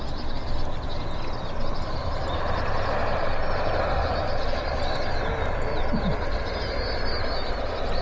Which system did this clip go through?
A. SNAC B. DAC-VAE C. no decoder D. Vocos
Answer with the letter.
C